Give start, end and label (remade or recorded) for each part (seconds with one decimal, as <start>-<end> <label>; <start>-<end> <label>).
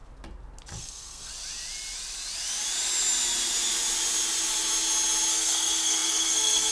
0.0-0.8 recorded; 0.8-1.3 remade; 1.3-5.3 recorded; 5.3-6.7 remade